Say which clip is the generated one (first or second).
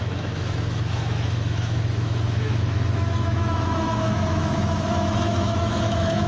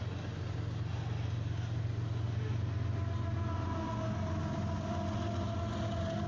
first